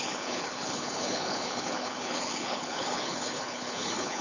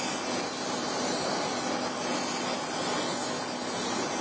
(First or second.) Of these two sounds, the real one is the second